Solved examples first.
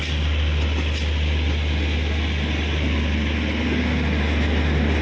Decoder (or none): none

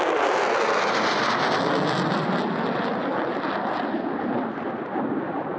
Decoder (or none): none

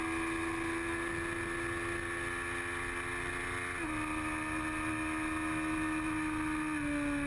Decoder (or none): none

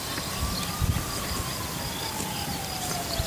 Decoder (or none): none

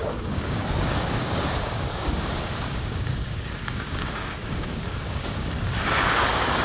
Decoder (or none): codec, DAC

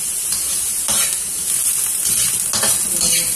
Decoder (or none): none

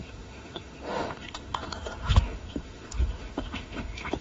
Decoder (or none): autoencoder, DAC-VAE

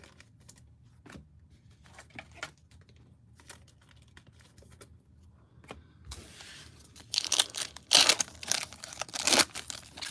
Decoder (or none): none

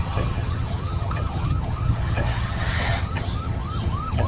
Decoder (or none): vocoder, HiFi-GAN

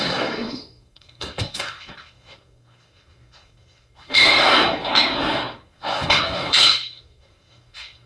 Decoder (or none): codec, SNAC